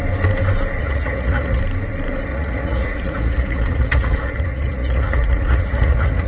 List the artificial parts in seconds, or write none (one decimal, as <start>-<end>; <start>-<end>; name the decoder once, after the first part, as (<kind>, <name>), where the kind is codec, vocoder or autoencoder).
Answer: 0.8-1.6 (vocoder, Vocos); 2.3-6.3